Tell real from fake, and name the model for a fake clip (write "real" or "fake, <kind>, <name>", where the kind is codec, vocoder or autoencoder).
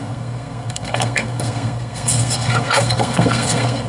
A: fake, codec, SNAC